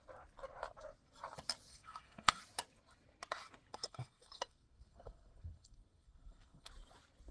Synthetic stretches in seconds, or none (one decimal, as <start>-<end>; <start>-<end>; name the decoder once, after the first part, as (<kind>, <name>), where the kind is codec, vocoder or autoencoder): 1.7-2.4 (codec, SNAC); 3.7-6.7